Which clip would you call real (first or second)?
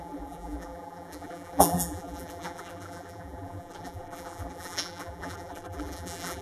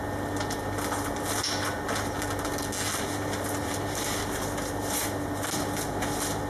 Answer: second